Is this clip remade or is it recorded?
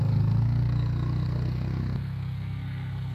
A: remade